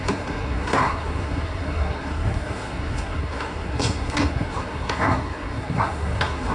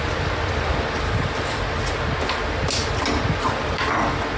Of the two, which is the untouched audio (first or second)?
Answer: second